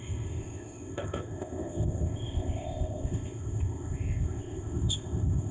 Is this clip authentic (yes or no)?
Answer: no